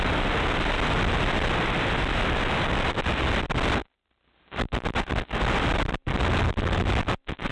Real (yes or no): yes